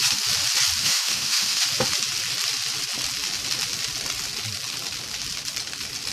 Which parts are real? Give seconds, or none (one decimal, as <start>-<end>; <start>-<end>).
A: 0.0-0.8; 1.6-6.1